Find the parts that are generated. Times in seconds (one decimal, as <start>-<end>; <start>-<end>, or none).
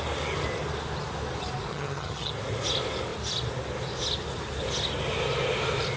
1.7-2.3